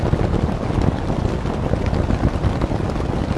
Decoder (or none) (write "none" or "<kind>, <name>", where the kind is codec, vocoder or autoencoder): none